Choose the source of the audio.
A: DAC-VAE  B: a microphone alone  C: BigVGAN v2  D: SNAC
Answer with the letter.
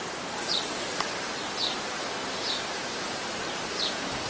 C